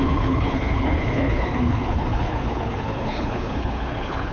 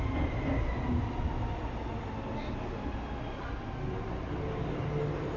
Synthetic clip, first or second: first